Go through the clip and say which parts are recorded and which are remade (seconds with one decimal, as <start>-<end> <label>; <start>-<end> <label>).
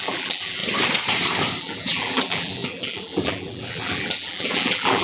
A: 0.0-0.6 remade; 0.6-1.6 recorded; 1.6-5.0 remade